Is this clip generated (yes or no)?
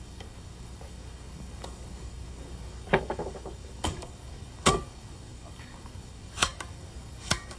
yes